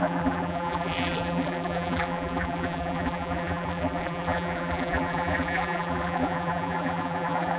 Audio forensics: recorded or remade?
remade